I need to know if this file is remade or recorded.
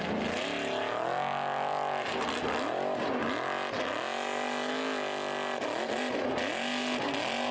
recorded